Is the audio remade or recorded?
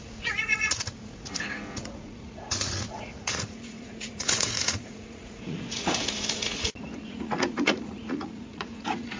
remade